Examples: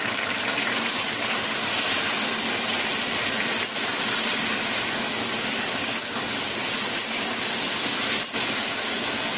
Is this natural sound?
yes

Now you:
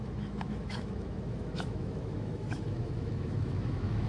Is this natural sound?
no